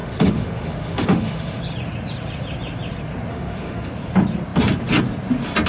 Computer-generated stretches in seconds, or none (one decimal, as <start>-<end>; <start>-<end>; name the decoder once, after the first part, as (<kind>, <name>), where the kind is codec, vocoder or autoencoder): 0.0-1.6 (autoencoder, DAC-VAE); 3.3-3.9